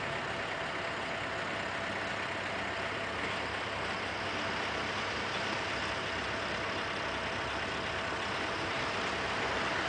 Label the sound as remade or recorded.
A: recorded